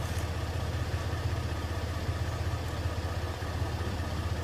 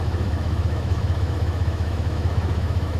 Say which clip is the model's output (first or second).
second